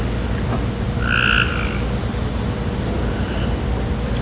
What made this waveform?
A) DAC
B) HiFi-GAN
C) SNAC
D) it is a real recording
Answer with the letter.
D